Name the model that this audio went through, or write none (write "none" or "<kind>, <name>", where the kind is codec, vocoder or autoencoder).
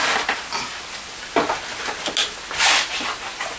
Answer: none